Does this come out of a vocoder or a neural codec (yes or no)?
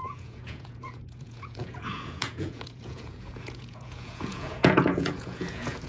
yes